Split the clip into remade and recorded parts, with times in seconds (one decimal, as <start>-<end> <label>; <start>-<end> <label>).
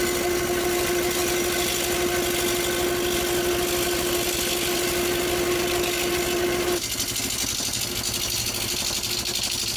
0.0-9.8 recorded